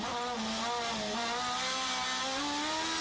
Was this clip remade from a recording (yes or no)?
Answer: no